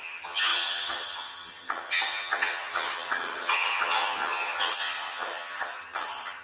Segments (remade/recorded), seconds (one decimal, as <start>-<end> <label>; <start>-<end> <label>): 0.0-6.4 remade